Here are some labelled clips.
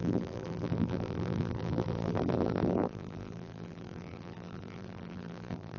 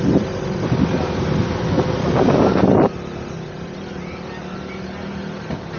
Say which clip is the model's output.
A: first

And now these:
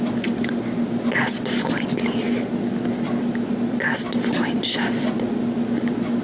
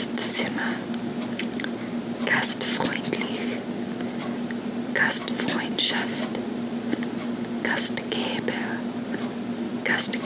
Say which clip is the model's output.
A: second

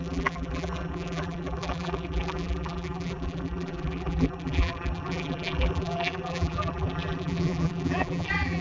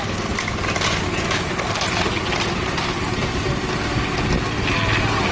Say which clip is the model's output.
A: first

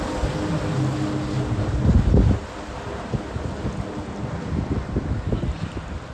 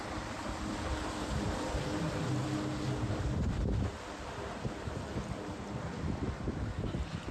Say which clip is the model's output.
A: second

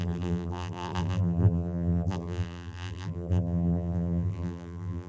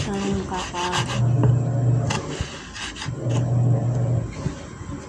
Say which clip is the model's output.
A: first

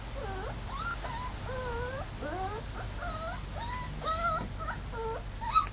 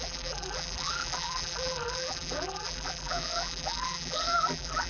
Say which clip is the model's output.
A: second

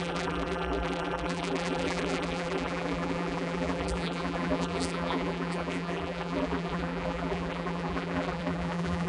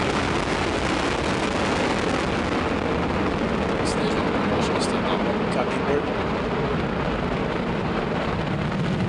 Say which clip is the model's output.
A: first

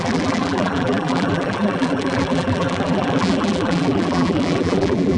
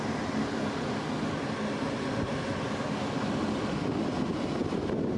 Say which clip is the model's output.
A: first